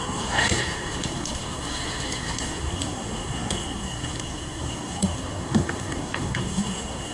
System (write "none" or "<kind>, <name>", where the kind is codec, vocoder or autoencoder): codec, SNAC